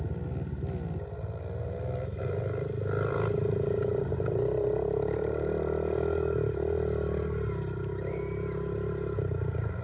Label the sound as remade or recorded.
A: recorded